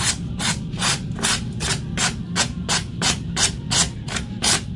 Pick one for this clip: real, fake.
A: real